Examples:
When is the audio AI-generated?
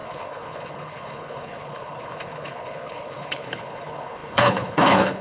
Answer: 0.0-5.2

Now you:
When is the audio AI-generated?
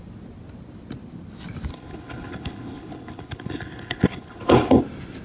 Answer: 1.7-4.8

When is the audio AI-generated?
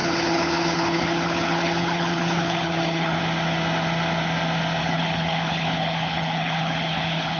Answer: 0.0-3.2; 4.8-7.4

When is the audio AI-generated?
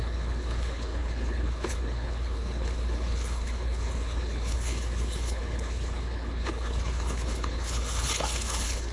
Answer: 0.0-8.9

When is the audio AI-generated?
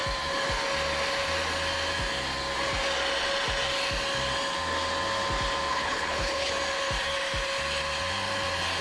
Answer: 5.7-6.5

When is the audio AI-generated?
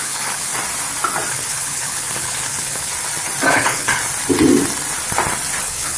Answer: 0.0-0.5; 1.3-2.9; 3.5-4.0; 5.6-6.0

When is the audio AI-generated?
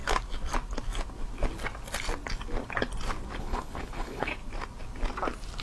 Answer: 3.4-4.3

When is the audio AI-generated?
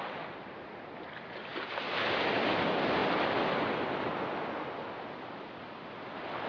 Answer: none